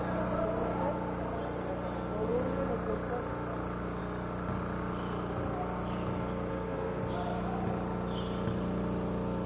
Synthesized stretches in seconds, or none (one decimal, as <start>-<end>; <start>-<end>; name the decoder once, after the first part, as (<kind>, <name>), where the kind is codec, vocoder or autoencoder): 6.5-7.0 (codec, SNAC)